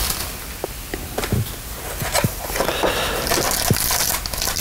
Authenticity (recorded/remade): recorded